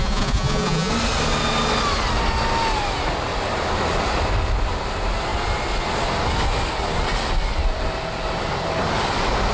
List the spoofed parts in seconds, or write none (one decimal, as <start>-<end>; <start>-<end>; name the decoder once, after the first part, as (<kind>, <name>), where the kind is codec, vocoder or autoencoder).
0.0-0.9 (vocoder, Vocos)